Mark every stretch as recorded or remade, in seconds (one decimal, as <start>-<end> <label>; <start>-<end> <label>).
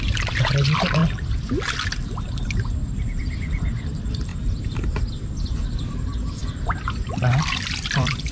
0.0-4.3 remade; 4.3-5.1 recorded; 5.1-8.3 remade